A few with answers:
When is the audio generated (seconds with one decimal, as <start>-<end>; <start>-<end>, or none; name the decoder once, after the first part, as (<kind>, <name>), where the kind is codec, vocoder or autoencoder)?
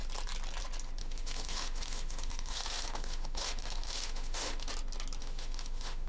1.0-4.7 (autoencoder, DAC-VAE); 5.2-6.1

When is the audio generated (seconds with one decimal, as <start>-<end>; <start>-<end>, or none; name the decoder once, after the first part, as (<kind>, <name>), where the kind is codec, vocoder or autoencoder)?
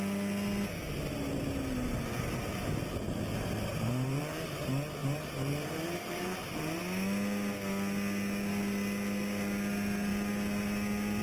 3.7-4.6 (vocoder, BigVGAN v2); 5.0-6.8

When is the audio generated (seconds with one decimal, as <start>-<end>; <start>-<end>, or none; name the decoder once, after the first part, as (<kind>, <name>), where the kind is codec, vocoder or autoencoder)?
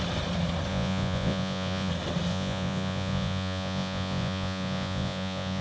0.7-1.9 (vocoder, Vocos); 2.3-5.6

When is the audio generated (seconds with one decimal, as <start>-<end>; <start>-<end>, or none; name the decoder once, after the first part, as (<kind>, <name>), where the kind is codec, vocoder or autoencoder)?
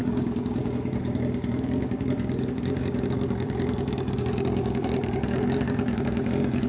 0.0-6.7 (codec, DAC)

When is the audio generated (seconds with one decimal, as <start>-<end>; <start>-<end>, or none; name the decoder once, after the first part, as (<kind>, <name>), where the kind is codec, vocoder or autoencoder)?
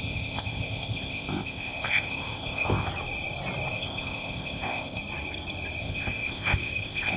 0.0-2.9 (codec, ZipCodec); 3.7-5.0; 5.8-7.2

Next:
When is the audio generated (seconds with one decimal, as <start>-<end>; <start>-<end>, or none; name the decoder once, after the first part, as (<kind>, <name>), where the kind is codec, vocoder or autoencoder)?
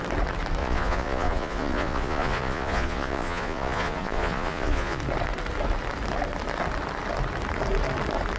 0.6-5.0 (vocoder, Vocos)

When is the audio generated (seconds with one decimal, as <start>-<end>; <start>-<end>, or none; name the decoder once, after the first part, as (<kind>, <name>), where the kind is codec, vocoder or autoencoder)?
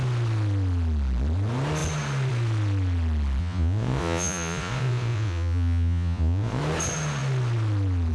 3.4-6.6 (vocoder, Vocos)